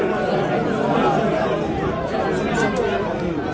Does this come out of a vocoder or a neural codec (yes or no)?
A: no